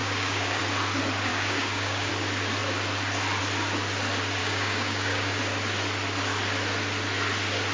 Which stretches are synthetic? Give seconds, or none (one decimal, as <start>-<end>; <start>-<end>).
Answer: 0.0-0.6; 1.3-2.1; 4.4-5.4